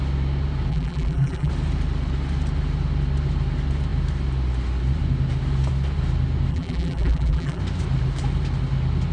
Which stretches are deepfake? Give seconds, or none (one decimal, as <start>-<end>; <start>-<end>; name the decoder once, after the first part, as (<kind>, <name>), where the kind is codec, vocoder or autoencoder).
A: 0.7-1.5 (vocoder, BigVGAN v2); 6.5-7.6